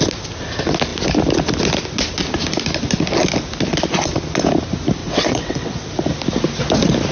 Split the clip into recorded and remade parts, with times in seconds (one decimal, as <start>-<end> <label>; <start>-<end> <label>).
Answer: 0.0-5.0 recorded; 5.0-5.9 remade; 5.9-7.1 recorded